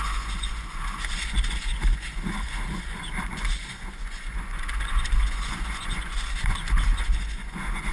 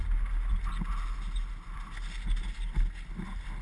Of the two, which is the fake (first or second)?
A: first